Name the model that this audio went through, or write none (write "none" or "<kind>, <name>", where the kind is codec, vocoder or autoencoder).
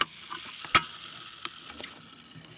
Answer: none